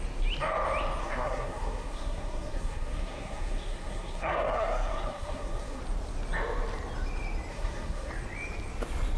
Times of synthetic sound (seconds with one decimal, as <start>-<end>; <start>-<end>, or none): 1.0-5.8; 7.5-8.1

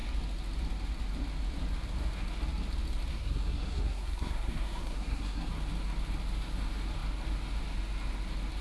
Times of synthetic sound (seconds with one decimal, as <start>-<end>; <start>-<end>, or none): 3.1-5.5